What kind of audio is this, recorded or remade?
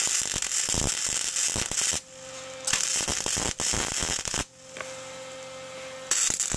recorded